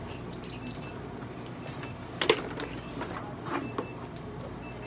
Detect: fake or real real